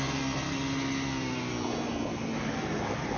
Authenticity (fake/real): real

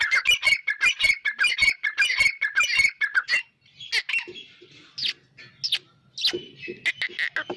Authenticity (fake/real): real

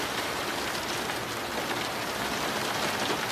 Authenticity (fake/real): real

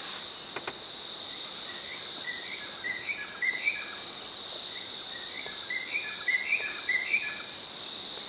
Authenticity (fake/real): real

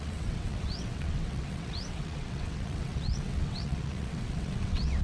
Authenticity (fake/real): fake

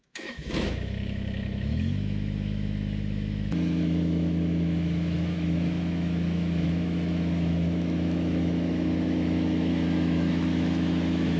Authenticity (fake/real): fake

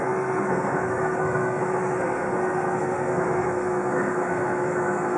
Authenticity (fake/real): fake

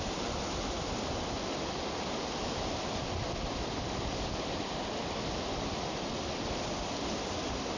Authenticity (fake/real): real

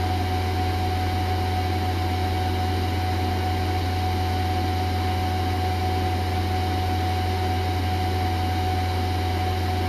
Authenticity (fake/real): real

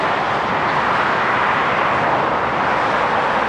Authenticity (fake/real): real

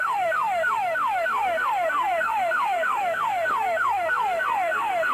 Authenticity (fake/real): fake